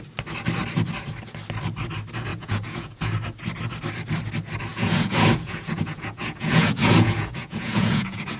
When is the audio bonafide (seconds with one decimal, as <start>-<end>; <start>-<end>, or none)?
0.0-2.3; 3.1-4.7